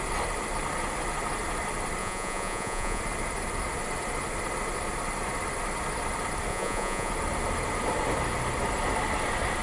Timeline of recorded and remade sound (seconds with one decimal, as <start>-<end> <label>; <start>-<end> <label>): 0.0-2.0 recorded; 2.0-3.0 remade; 3.0-6.5 recorded; 6.5-7.1 remade; 7.1-9.6 recorded